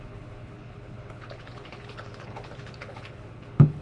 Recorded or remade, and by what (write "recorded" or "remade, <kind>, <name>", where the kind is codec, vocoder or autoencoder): remade, codec, HILCodec